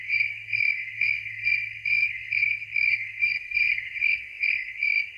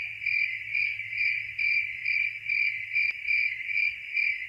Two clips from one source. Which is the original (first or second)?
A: second